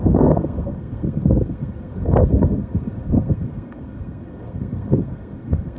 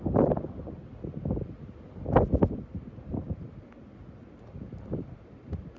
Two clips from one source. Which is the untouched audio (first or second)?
second